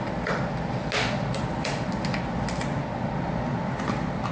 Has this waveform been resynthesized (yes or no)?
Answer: no